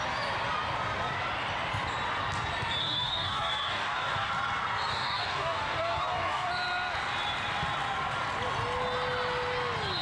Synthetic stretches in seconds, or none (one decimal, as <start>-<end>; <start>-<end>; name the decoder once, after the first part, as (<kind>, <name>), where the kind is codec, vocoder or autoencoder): 2.8-4.3 (codec, DAC); 4.9-6.5